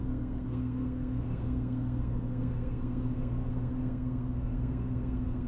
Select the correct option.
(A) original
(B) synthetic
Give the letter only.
B